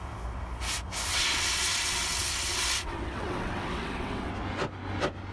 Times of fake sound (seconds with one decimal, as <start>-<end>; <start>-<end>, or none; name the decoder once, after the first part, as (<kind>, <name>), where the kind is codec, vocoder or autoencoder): 1.1-4.3 (vocoder, WaveNeXt)